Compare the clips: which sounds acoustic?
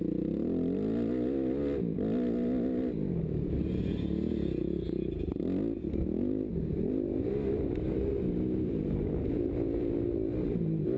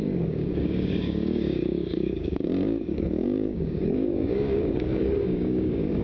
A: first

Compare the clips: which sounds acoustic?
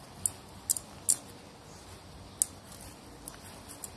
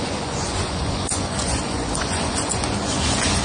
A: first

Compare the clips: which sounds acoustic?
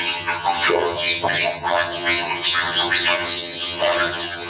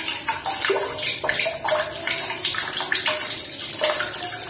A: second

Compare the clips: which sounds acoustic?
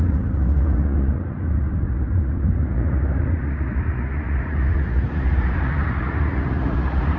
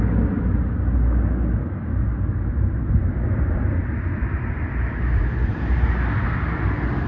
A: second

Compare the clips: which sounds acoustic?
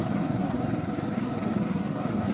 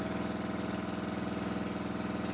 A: second